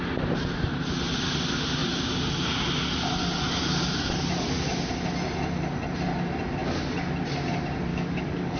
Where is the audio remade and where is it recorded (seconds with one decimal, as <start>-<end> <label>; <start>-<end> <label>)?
0.0-6.6 recorded; 6.6-7.1 remade; 7.1-7.9 recorded; 7.9-8.6 remade